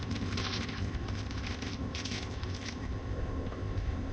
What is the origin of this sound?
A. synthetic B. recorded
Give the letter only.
A